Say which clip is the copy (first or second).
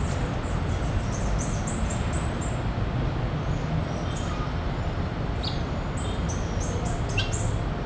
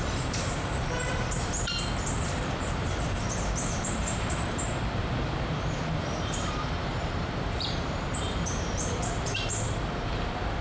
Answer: second